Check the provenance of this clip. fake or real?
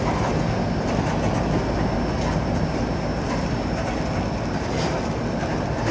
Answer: real